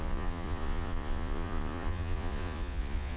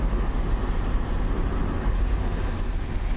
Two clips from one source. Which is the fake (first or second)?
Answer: first